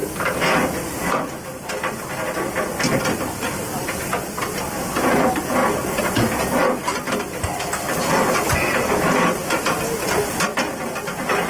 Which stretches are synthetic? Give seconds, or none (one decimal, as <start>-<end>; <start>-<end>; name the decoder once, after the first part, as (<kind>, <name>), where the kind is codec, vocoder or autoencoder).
0.0-1.0 (vocoder, BigVGAN v2); 10.5-11.1